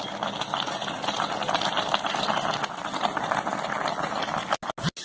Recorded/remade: recorded